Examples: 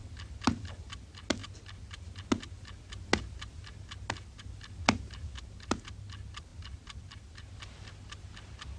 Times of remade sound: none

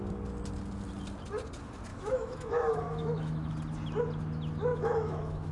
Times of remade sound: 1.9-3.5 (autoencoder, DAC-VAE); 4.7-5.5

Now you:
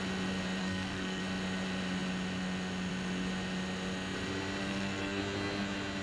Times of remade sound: 0.6-1.2 (codec, SNAC); 4.6-5.2